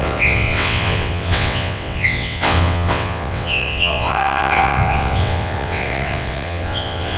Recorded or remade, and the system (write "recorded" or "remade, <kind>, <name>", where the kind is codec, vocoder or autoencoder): remade, vocoder, WaveNeXt